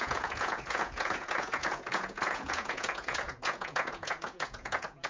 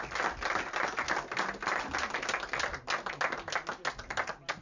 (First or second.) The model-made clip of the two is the first